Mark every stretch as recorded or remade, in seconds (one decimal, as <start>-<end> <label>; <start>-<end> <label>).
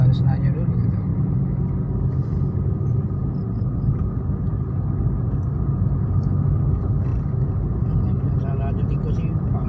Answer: 0.0-9.7 recorded